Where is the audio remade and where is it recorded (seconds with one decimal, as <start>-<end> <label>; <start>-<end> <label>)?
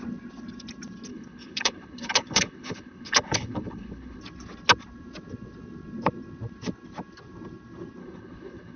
0.0-1.1 recorded; 1.1-4.2 remade; 4.2-8.0 recorded; 8.0-8.8 remade